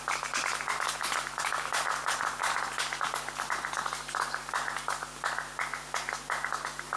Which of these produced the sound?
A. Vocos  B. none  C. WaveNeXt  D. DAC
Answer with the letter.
B